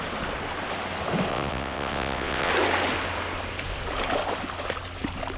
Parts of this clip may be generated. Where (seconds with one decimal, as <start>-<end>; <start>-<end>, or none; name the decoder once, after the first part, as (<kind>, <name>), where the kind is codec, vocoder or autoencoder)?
1.3-2.5 (vocoder, WaveNeXt)